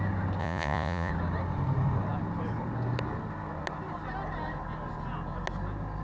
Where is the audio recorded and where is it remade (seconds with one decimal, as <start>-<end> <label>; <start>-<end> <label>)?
0.0-0.4 recorded; 0.4-1.1 remade; 1.1-6.0 recorded